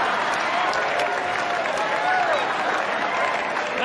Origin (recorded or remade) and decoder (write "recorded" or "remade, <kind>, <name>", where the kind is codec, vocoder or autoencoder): recorded